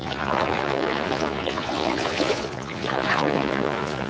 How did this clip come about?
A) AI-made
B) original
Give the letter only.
A